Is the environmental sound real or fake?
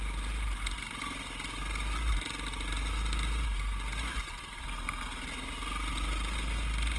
real